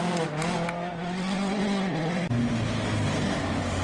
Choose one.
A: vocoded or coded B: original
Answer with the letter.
B